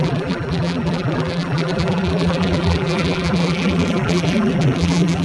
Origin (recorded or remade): remade